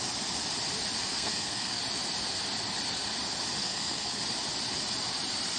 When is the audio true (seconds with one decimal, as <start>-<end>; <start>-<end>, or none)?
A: 0.0-1.1; 1.8-3.6; 4.2-5.6